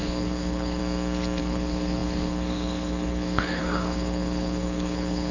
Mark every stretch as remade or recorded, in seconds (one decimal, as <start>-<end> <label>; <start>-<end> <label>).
0.0-0.8 remade; 0.8-1.4 recorded; 1.4-5.3 remade